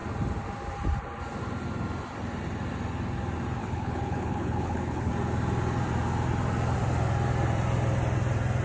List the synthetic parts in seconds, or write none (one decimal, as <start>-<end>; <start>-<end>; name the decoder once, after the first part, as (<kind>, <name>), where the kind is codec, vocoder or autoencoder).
3.6-5.1 (codec, HILCodec)

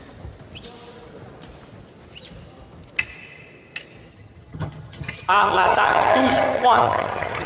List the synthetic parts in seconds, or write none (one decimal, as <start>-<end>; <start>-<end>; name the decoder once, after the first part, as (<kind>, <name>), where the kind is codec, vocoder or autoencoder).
4.1-7.5 (vocoder, HiFi-GAN)

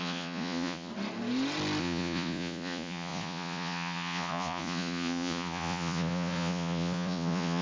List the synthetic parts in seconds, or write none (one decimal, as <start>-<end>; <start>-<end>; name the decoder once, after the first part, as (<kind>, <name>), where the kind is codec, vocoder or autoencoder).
0.0-0.9 (vocoder, Vocos); 1.8-7.6

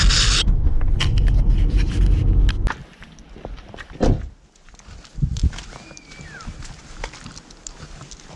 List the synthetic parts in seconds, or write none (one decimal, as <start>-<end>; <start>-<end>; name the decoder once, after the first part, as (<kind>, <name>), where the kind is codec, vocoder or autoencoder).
none

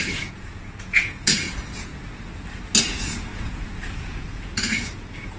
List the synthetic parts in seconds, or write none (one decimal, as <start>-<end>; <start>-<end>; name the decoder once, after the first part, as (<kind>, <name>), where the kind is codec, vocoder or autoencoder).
0.0-1.9 (vocoder, Vocos); 2.8-5.4

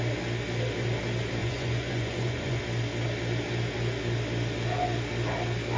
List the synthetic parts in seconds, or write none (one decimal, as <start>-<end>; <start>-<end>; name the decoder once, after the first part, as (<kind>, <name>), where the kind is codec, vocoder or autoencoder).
1.4-2.6 (vocoder, Vocos)

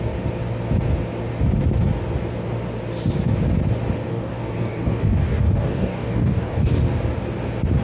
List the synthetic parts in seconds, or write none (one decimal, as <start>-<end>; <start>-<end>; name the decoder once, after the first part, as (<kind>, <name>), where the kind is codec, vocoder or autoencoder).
4.1-6.8 (codec, DAC)